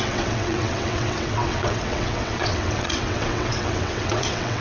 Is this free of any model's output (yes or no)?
no